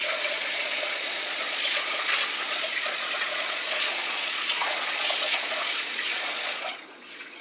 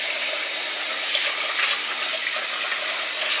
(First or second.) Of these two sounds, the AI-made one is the first